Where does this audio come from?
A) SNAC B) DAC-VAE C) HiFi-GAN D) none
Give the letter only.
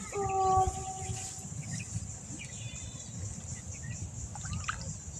D